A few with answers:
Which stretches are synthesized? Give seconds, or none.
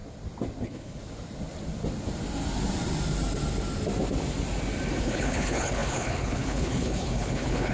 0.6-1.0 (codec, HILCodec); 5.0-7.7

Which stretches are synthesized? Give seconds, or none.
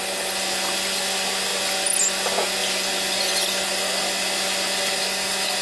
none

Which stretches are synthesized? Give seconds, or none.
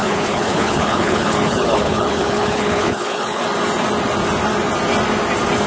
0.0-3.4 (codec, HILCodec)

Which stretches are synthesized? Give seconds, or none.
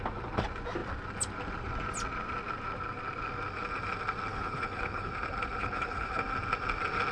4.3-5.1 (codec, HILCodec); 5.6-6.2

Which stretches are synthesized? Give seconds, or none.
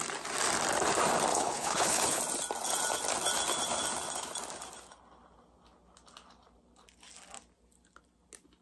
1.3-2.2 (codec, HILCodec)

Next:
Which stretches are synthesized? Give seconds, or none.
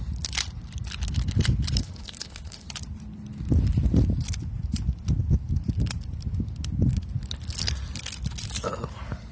1.8-2.7 (codec, HILCodec)